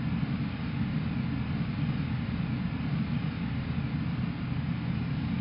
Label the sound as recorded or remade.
recorded